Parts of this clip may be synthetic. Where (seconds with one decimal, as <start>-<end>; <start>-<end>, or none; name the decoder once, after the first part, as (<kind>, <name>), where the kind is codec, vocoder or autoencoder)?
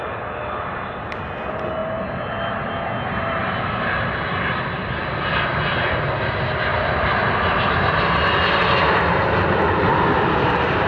3.4-5.7 (vocoder, BigVGAN v2)